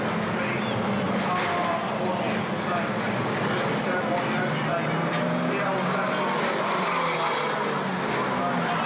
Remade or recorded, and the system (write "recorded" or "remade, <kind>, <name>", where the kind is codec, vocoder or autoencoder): recorded